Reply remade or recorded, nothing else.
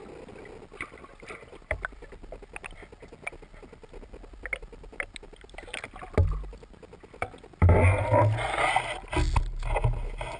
recorded